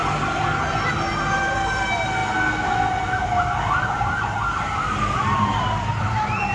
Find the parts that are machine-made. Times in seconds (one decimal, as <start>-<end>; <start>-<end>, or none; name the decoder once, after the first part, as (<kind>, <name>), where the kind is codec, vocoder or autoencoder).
none